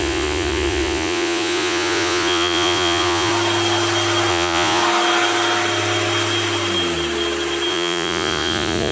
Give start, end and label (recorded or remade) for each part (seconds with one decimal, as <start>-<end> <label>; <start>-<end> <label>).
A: 0.0-3.3 remade; 3.3-4.3 recorded; 4.3-4.8 remade; 4.8-7.7 recorded; 7.7-8.9 remade